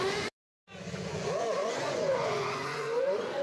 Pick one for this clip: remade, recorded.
remade